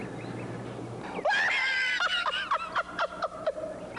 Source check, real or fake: real